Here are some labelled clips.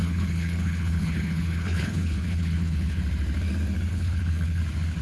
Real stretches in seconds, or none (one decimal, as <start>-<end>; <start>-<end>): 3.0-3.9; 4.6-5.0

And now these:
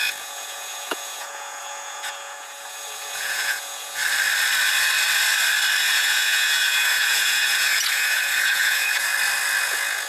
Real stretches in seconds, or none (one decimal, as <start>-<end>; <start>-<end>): 4.0-5.8; 9.1-9.6

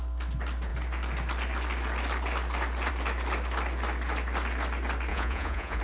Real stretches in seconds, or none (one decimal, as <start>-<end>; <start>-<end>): 0.0-5.1

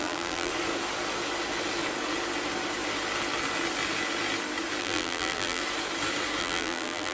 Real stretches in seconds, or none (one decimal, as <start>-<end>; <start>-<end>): 0.5-4.8; 5.6-6.4

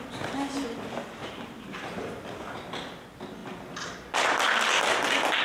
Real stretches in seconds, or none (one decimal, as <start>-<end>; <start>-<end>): 0.0-1.2; 2.1-5.4